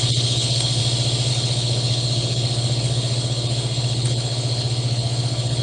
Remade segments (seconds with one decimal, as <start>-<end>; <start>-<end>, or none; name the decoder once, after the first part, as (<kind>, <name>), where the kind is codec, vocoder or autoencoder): 0.0-0.8 (codec, HILCodec); 1.3-5.6